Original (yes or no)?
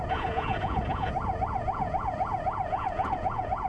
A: no